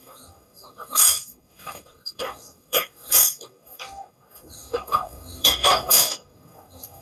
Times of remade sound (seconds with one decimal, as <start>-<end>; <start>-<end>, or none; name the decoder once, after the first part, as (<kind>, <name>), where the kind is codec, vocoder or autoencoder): 0.0-7.0 (codec, DAC)